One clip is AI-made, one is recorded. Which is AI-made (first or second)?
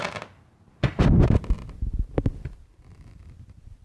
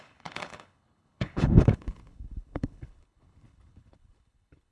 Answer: second